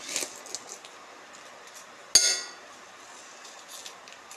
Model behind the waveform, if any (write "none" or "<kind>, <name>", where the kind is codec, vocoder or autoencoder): none